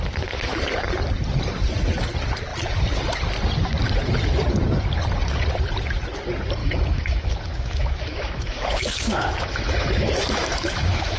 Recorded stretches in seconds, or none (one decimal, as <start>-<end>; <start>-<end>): 0.0-6.6